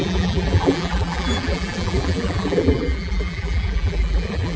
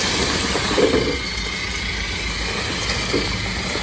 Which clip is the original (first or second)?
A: second